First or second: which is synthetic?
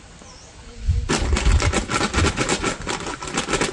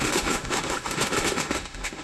second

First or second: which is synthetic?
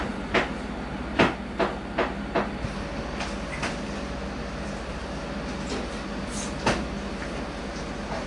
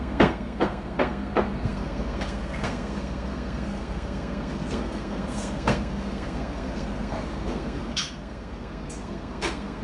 second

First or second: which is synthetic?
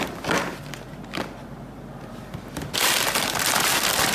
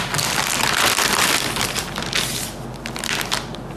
first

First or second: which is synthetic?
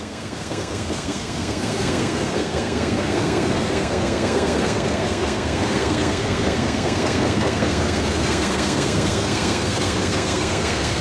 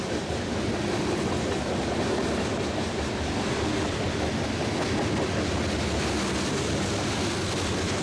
first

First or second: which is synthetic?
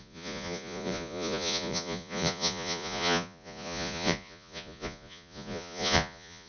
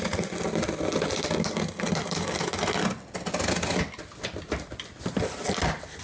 first